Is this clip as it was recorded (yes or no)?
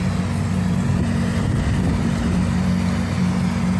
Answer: yes